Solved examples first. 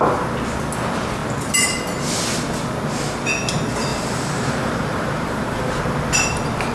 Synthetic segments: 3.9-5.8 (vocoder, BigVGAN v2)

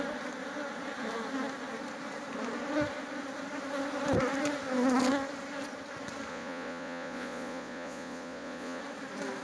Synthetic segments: 6.3-8.8 (vocoder, Vocos)

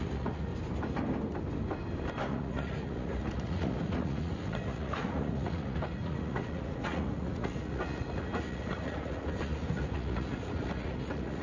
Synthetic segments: 0.0-0.5 (vocoder, Vocos); 2.3-11.4

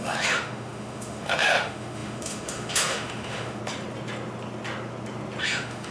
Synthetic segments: 0.0-3.6 (autoencoder, DAC-VAE); 5.4-5.9

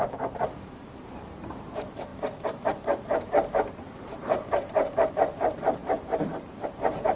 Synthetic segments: 0.0-7.2 (vocoder, BigVGAN v2)

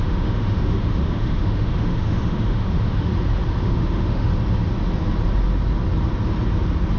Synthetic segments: 0.0-3.1 (autoencoder, DAC-VAE); 3.6-4.3

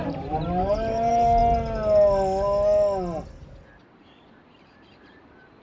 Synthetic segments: 0.0-1.4 (vocoder, BigVGAN v2); 3.9-5.6